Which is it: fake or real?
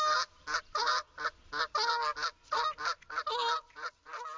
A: real